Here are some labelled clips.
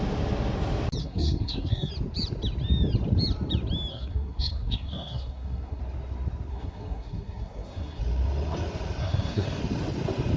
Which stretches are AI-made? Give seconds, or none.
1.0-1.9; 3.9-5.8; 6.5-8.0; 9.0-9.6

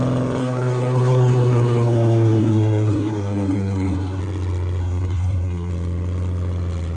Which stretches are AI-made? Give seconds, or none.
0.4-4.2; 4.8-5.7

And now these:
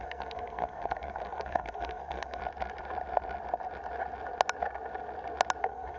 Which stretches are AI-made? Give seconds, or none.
0.0-2.4; 5.6-6.0

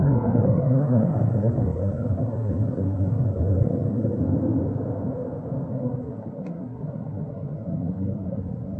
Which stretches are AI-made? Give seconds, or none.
0.0-4.2; 5.7-8.8

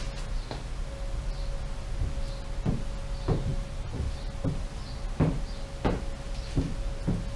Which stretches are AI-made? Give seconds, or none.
none